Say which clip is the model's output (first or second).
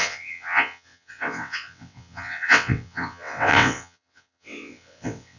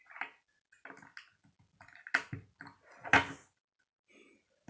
first